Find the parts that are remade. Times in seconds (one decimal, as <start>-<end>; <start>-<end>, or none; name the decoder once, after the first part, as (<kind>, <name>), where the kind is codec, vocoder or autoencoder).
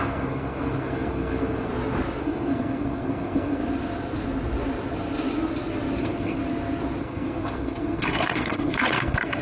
0.0-1.7 (codec, SNAC); 2.2-3.6; 6.0-6.4; 7.0-9.4